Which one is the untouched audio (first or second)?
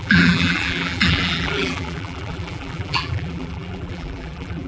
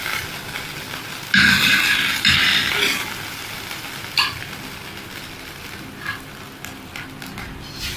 second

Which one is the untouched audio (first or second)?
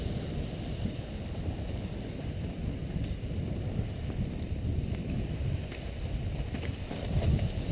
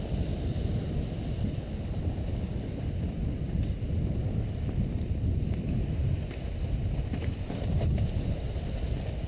second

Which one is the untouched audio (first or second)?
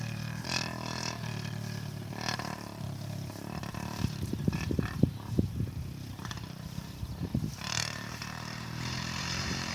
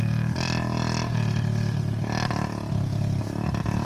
second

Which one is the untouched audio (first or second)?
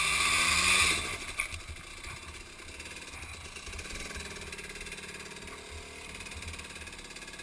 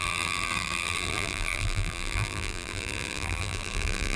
first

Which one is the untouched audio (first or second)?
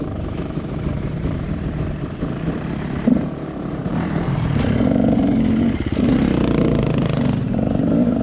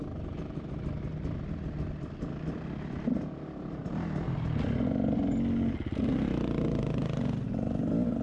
second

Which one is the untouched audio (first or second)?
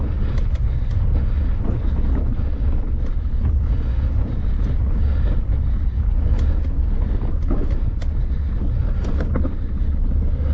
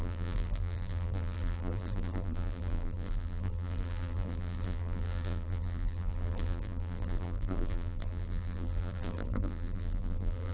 first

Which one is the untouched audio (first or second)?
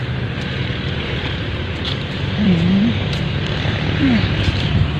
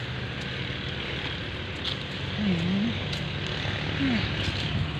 second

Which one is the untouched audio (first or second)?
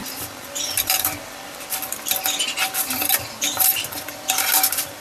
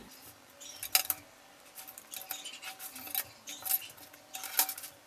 second